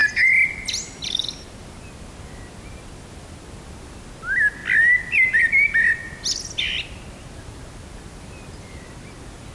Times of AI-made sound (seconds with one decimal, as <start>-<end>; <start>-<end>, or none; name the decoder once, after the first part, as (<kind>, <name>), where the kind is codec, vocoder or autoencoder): none